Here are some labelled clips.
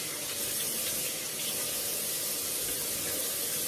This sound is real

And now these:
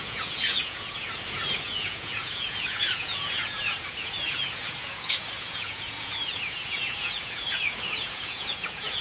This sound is fake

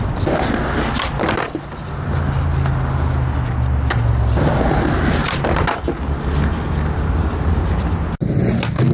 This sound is real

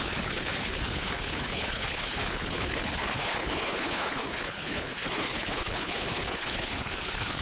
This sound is fake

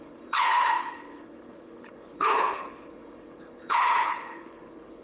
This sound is fake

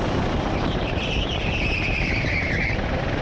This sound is fake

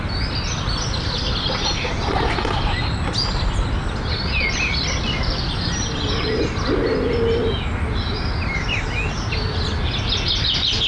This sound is real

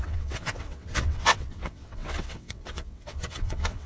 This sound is fake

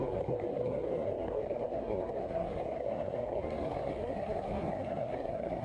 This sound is fake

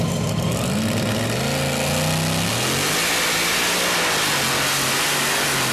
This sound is real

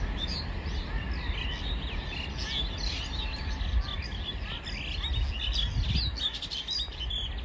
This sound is real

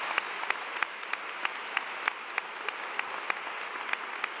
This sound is real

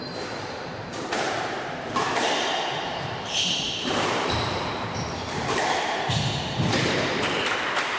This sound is fake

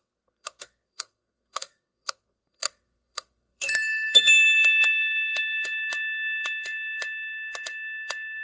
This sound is fake